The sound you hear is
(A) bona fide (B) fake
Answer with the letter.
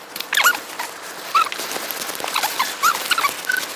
A